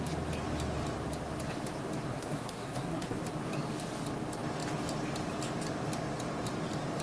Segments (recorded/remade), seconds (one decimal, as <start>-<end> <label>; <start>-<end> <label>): 0.0-2.1 recorded; 2.1-3.2 remade; 3.2-7.0 recorded